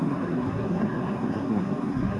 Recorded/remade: remade